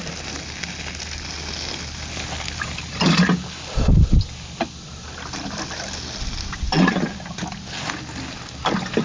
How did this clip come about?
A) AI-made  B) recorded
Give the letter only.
B